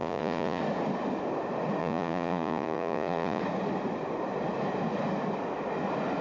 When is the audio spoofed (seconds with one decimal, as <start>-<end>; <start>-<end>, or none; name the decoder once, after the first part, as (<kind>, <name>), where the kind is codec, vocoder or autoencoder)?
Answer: 0.0-0.6 (vocoder, Vocos); 1.8-3.4